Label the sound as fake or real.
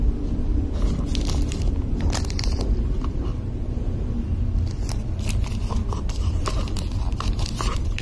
fake